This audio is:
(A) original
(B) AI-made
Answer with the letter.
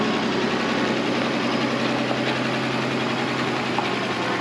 A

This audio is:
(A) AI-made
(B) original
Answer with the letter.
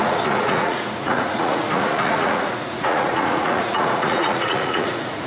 A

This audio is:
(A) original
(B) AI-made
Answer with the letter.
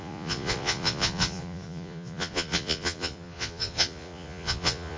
B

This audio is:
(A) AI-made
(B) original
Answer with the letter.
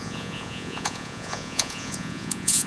A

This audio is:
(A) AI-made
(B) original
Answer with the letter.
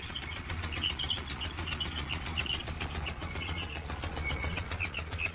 A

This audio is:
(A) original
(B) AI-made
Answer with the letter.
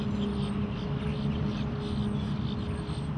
A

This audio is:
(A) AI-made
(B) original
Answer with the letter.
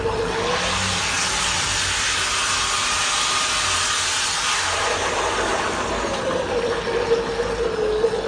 B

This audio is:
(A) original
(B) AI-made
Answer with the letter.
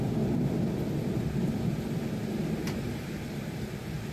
A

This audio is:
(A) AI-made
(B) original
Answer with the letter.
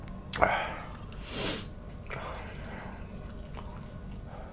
B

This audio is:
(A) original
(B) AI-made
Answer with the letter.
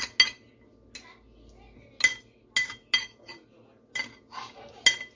A